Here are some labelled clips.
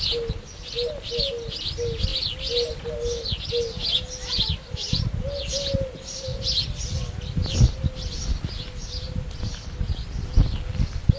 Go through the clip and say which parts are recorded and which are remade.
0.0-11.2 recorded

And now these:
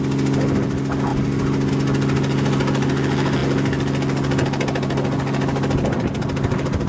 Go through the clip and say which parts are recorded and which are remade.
0.0-6.9 recorded

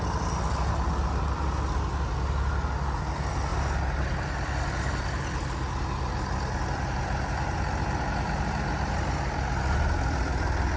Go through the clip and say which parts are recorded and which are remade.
0.0-10.8 recorded

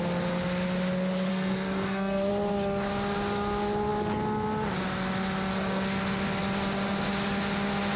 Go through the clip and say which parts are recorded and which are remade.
0.0-1.3 recorded; 1.3-2.3 remade; 2.3-8.0 recorded

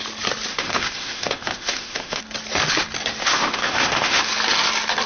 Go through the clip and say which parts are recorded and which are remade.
0.0-0.5 recorded; 0.5-2.2 remade; 2.2-3.2 recorded; 3.2-4.2 remade; 4.2-5.1 recorded

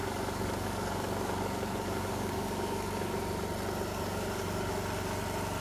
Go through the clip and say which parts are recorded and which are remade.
0.0-3.2 remade; 3.2-3.9 recorded; 3.9-4.7 remade; 4.7-5.6 recorded

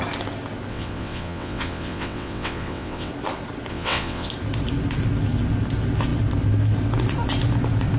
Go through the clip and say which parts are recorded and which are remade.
0.0-0.7 recorded; 0.7-3.1 remade; 3.1-3.7 recorded; 3.7-4.3 remade; 4.3-8.0 recorded

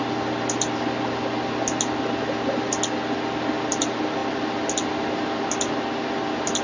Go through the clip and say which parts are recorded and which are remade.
0.0-6.6 recorded